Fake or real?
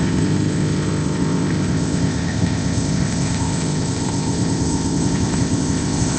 fake